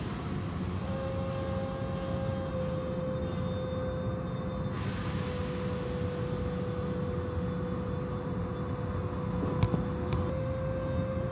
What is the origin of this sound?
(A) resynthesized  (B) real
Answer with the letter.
B